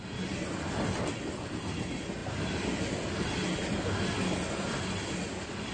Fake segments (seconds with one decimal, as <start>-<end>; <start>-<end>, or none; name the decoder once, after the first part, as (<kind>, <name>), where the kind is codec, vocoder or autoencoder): none